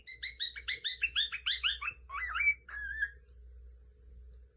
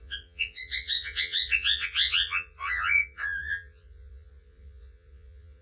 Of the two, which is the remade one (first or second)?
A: second